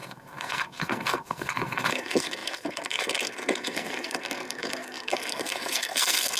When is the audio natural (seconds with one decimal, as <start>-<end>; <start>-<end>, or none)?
none